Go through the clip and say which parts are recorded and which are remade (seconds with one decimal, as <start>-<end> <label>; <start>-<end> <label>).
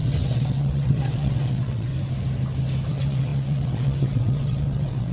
0.0-1.9 remade; 1.9-2.9 recorded; 2.9-5.1 remade